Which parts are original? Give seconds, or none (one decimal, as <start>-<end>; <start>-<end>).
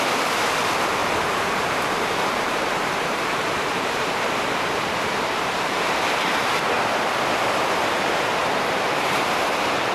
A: 0.0-1.0; 6.0-8.4